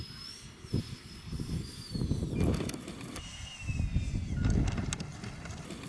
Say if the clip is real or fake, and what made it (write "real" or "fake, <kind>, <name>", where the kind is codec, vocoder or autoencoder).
real